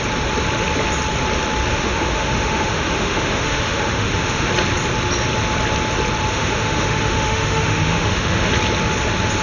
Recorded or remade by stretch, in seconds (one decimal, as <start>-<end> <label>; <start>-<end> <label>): 0.0-1.7 recorded; 1.7-4.5 remade; 4.5-6.3 recorded; 6.3-8.5 remade; 8.5-9.4 recorded